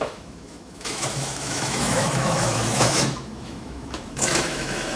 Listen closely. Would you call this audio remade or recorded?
remade